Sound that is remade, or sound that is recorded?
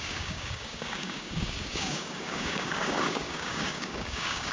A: remade